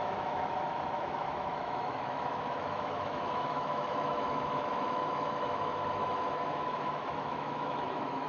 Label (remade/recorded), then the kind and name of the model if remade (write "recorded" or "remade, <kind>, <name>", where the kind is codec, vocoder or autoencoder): remade, autoencoder, DAC-VAE